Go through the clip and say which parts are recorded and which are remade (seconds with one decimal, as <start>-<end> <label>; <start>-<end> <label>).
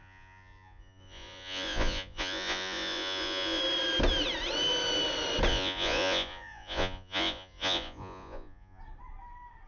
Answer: 0.0-3.6 remade; 3.6-5.5 recorded; 5.5-8.8 remade; 8.8-9.7 recorded